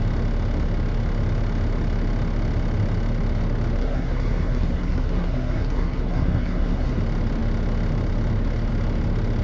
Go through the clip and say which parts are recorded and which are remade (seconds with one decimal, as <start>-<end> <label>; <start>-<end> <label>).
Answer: 0.0-3.8 recorded; 3.8-7.0 remade; 7.0-9.4 recorded